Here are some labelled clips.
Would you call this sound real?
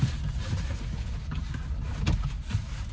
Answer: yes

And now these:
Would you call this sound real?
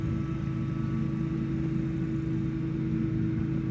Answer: yes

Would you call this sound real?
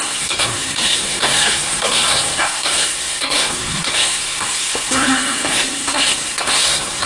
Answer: no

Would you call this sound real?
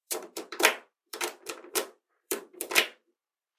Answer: no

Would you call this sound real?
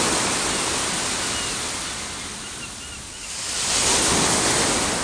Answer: yes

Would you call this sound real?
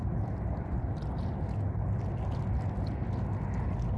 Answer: yes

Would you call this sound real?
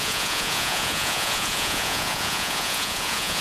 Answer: no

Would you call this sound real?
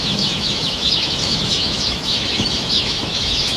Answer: no